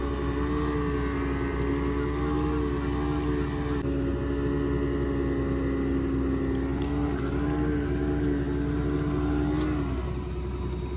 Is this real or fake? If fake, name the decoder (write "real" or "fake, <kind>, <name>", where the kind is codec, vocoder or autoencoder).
real